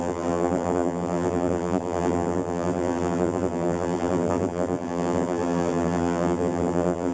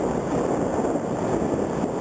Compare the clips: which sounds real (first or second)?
second